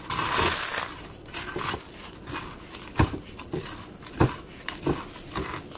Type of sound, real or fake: real